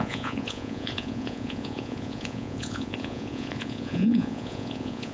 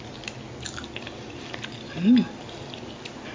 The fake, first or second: first